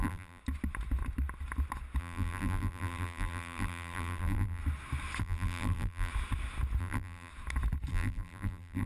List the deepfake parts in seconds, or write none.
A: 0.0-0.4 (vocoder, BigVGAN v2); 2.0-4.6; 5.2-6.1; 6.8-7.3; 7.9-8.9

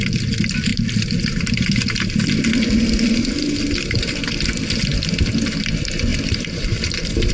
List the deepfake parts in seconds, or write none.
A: 0.7-1.4 (vocoder, BigVGAN v2); 6.1-7.3

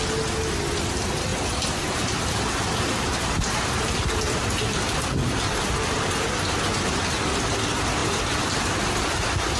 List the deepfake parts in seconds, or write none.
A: 1.3-6.1 (vocoder, BigVGAN v2)

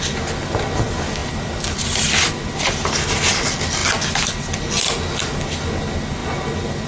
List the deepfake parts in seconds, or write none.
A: 1.2-2.3 (vocoder, BigVGAN v2)

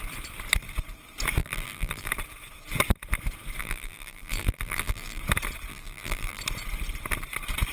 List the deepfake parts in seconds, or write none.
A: 1.4-2.1 (vocoder, BigVGAN v2); 3.6-5.2; 5.7-6.4

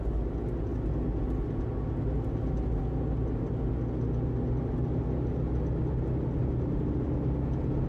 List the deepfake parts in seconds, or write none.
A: 6.4-6.9 (vocoder, BigVGAN v2)

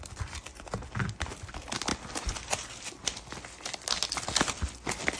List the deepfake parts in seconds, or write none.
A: none